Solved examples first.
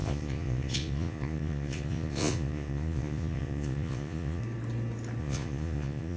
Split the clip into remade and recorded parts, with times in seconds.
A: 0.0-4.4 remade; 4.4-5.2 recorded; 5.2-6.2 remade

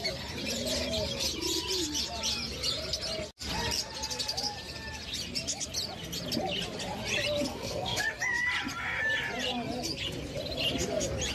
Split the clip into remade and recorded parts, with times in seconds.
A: 0.0-7.5 recorded; 7.5-8.0 remade; 8.0-11.3 recorded

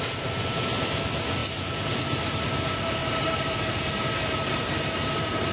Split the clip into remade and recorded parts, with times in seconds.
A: 0.0-3.0 recorded; 3.0-3.9 remade; 3.9-4.4 recorded; 4.4-5.5 remade

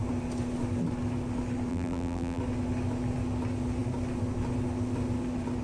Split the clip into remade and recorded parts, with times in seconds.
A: 0.0-1.7 recorded; 1.7-2.4 remade; 2.4-5.6 recorded